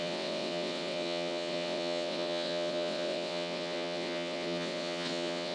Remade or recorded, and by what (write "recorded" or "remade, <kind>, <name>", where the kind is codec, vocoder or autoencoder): remade, vocoder, WaveNeXt